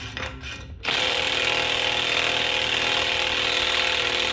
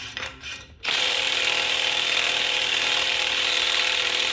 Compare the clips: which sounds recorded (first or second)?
first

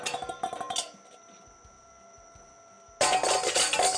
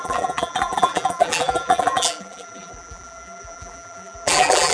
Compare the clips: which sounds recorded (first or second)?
first